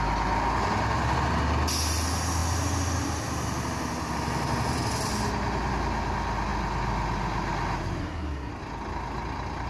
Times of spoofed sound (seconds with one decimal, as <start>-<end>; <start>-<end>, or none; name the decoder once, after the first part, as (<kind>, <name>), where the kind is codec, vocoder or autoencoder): 8.0-8.5 (codec, SNAC)